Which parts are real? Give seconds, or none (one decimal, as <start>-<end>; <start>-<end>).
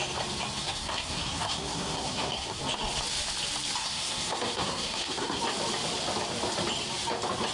0.0-0.6; 2.6-3.8; 5.4-7.5